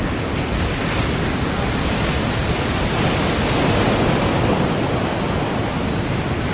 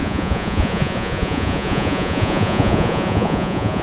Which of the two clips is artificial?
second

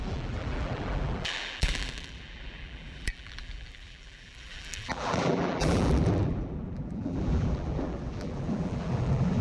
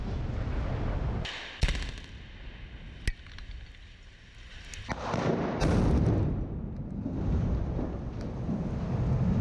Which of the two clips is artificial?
first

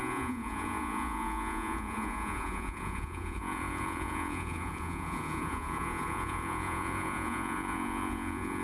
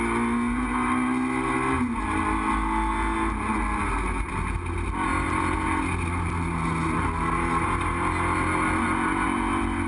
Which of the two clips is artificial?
first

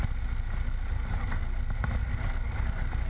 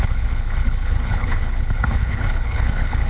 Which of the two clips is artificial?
second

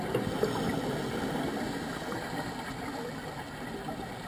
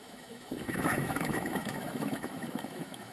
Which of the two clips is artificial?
second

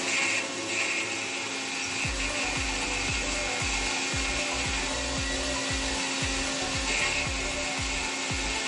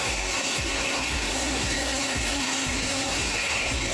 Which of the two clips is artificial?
second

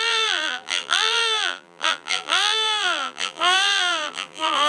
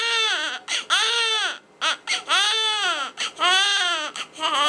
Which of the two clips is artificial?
first